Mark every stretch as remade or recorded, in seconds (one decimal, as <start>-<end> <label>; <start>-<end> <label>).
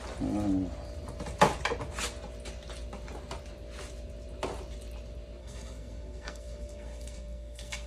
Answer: 0.0-5.4 recorded; 5.4-7.9 remade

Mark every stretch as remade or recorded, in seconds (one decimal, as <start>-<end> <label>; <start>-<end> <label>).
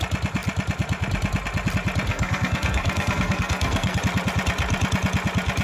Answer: 0.0-2.1 recorded; 2.1-4.0 remade; 4.0-5.6 recorded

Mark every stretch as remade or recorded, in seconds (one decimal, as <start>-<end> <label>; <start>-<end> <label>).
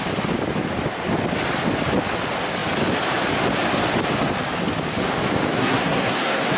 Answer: 0.0-5.5 recorded; 5.5-6.6 remade